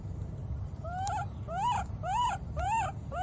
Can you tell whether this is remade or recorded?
remade